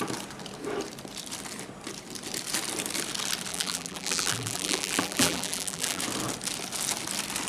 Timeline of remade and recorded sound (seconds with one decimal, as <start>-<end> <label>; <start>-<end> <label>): 0.0-3.5 recorded; 3.5-6.0 remade; 6.0-7.5 recorded